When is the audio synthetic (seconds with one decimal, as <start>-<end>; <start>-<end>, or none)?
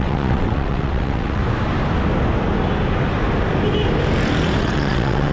0.0-1.4; 4.6-5.3